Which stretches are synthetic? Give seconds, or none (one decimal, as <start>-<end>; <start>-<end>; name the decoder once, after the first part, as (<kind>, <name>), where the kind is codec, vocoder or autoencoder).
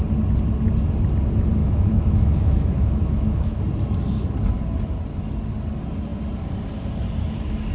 1.6-3.6 (autoencoder, DAC-VAE)